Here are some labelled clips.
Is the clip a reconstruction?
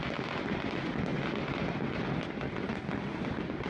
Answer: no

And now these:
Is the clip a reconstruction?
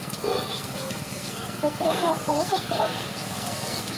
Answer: yes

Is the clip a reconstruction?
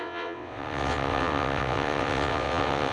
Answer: yes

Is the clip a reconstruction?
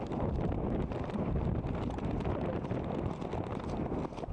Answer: no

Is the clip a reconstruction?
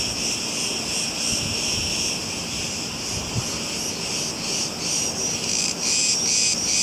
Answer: no